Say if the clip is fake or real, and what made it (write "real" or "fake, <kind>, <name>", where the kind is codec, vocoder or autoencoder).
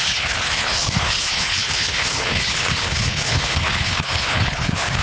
fake, codec, HILCodec